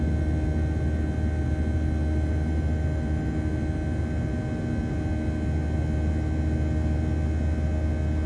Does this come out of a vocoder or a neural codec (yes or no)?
no